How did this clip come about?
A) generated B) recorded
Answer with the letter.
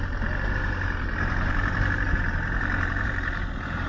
A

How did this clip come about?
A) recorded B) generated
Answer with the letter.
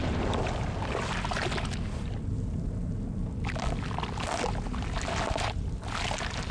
A